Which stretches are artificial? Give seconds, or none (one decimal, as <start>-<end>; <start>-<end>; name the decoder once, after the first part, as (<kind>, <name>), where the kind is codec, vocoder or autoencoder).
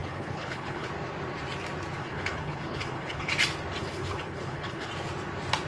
0.0-0.9 (codec, HILCodec); 2.0-3.3; 3.8-4.9